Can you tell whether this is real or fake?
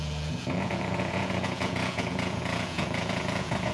fake